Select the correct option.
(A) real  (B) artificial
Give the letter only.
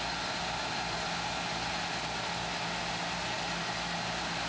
A